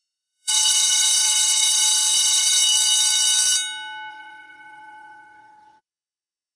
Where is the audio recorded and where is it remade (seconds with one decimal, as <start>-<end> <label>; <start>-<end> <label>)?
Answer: 0.0-2.6 remade; 2.6-4.1 recorded; 4.1-6.6 remade